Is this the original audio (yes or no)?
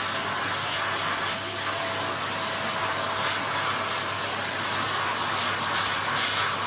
yes